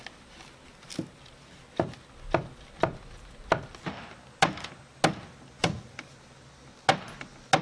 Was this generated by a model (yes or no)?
no